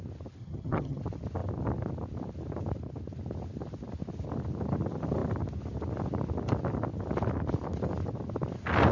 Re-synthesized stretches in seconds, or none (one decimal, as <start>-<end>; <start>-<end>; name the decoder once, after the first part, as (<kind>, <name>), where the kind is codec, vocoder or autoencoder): 0.4-1.0 (vocoder, HiFi-GAN)